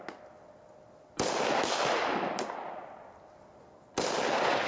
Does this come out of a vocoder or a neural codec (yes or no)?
no